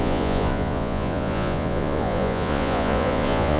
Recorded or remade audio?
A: remade